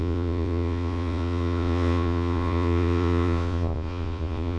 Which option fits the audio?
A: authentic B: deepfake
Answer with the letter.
B